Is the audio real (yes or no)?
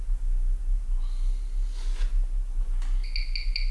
yes